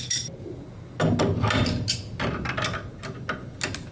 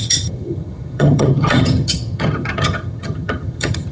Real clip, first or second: first